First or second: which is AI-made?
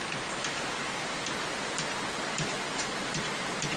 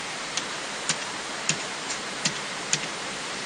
second